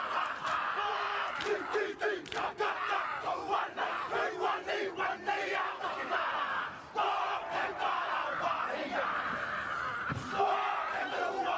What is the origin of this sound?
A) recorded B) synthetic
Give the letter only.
B